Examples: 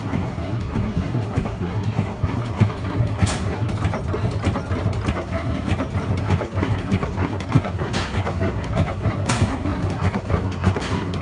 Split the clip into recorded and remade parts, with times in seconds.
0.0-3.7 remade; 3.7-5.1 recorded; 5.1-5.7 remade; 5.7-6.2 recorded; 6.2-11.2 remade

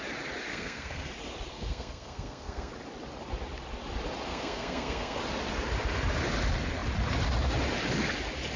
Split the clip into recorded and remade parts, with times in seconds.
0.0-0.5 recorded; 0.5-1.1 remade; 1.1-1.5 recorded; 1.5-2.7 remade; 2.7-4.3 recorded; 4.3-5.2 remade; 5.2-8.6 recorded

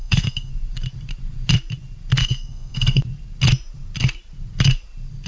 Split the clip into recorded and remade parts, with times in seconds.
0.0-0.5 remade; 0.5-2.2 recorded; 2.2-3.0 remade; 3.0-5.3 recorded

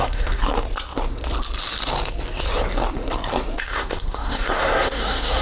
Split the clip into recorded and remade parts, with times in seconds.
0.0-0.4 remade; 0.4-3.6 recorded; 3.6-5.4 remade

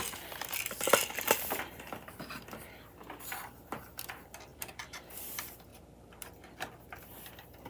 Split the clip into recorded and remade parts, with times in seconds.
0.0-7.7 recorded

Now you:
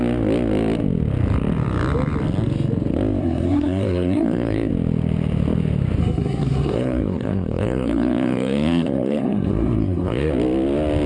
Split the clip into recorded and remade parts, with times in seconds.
0.0-3.2 recorded; 3.2-4.7 remade; 4.7-6.0 recorded; 6.0-10.3 remade; 10.3-11.1 recorded